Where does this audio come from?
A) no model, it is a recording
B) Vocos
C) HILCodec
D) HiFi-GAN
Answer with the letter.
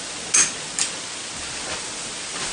A